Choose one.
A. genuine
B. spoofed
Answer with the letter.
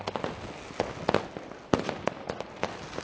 A